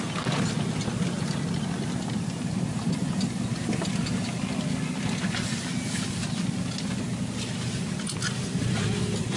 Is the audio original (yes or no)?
yes